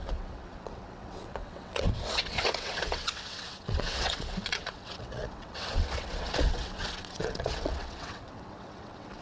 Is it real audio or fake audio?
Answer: fake